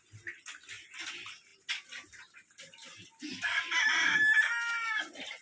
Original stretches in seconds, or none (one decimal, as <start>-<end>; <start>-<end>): 0.0-5.4